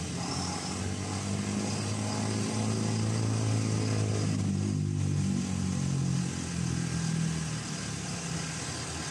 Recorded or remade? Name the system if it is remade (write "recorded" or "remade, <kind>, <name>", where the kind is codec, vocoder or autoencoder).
recorded